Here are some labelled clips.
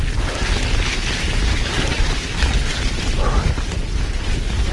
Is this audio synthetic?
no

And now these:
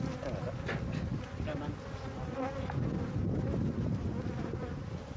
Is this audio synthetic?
no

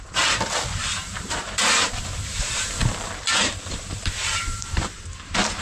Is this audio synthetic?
yes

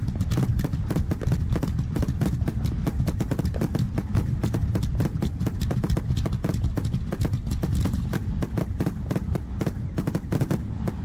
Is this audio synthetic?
no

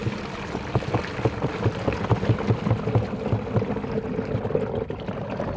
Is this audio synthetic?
no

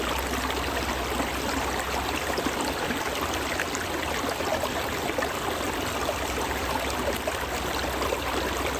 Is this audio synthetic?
no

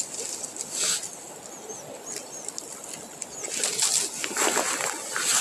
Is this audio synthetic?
no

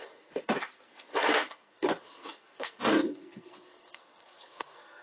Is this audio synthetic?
yes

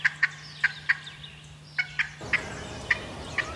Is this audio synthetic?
no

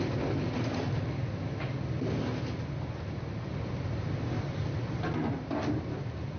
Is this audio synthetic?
no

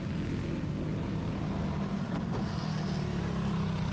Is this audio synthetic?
no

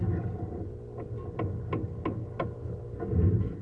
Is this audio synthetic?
no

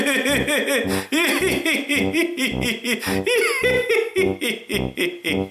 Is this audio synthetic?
no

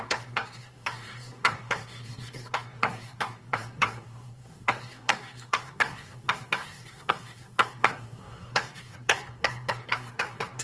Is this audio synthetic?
yes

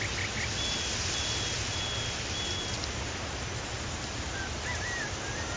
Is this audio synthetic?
no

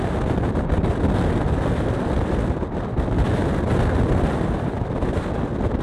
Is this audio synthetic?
no